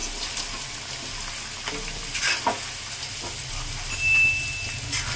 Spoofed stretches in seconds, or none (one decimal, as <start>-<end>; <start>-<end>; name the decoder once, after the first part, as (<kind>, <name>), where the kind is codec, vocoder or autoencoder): none